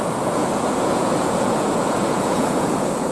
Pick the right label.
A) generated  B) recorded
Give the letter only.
A